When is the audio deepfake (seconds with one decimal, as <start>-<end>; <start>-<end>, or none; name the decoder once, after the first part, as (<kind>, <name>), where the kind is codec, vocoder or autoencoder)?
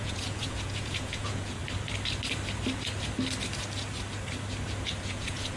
0.0-1.6 (vocoder, Vocos); 5.0-5.6